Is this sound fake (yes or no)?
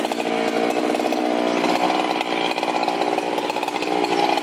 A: no